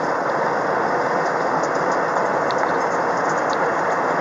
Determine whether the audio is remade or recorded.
recorded